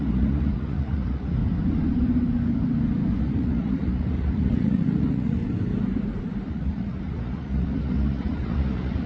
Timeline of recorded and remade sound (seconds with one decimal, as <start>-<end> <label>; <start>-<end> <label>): 0.0-1.4 remade; 1.4-3.2 recorded; 3.2-5.4 remade; 5.4-6.5 recorded; 6.5-9.1 remade